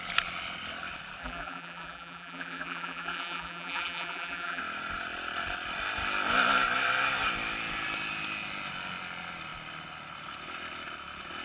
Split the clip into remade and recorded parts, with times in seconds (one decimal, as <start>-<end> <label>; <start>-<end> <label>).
0.0-1.2 recorded; 1.2-4.6 remade; 4.6-11.4 recorded